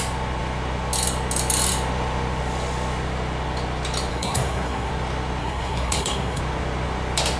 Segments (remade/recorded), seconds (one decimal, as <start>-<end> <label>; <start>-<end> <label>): 0.0-4.1 recorded; 4.1-4.9 remade; 4.9-5.4 recorded; 5.4-6.4 remade; 6.4-7.4 recorded